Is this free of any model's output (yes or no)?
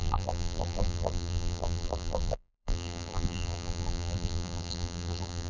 no